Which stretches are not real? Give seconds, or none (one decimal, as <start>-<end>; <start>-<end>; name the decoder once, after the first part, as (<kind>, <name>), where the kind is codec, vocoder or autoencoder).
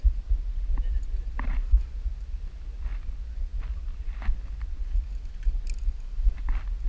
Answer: none